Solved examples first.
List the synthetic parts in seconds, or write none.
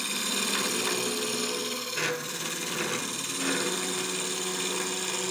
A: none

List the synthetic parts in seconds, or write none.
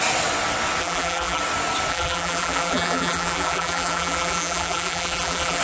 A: 0.8-1.4 (vocoder, BigVGAN v2); 1.9-5.6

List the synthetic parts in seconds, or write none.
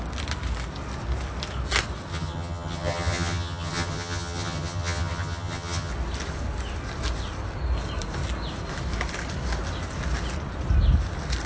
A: 2.1-5.9 (vocoder, HiFi-GAN)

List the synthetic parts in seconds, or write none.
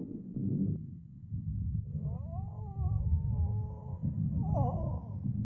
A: 0.0-3.2 (codec, DAC); 3.8-4.8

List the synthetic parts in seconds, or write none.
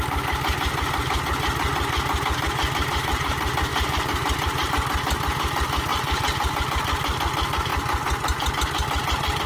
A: 3.7-4.7 (vocoder, BigVGAN v2); 5.9-6.6